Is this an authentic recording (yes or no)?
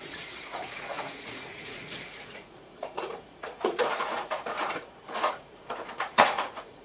no